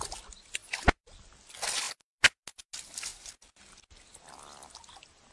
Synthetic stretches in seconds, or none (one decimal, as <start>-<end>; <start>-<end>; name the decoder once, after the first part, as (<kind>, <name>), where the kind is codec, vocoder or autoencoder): none